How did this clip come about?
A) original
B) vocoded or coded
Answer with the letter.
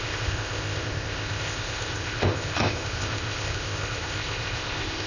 B